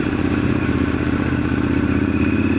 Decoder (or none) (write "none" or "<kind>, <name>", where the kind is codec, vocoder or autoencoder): vocoder, BigVGAN v2